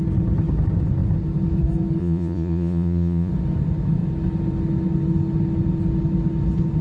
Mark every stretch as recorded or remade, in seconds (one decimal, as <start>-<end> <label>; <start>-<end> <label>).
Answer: 0.0-2.0 recorded; 2.0-3.3 remade; 3.3-6.8 recorded